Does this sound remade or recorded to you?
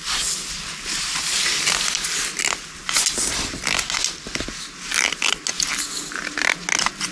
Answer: recorded